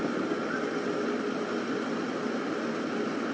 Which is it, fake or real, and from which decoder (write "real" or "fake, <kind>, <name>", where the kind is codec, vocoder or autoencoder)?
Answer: real